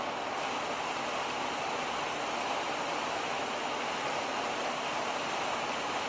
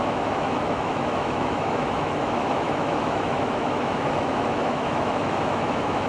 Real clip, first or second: first